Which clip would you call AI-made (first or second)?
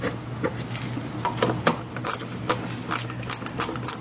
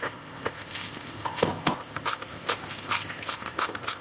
second